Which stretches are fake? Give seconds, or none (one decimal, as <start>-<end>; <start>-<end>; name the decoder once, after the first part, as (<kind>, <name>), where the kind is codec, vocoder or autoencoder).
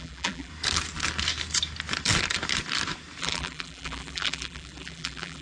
0.0-0.5 (vocoder, BigVGAN v2); 3.2-5.4